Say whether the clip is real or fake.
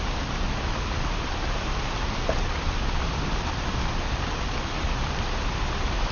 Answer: real